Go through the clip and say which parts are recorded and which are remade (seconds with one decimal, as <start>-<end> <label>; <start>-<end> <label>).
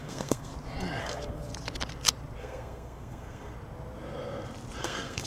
0.0-0.5 remade; 0.5-1.0 recorded; 1.0-1.5 remade; 1.5-2.4 recorded; 2.4-3.5 remade; 3.5-4.8 recorded; 4.8-5.3 remade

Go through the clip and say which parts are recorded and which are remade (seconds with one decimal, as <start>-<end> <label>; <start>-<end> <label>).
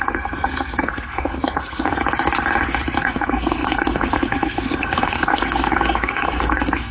0.0-2.0 remade; 2.0-3.0 recorded; 3.0-6.9 remade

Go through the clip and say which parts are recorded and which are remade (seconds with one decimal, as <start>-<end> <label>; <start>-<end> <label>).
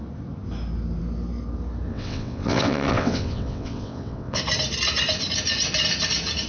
0.0-1.9 recorded; 1.9-4.4 remade; 4.4-6.5 recorded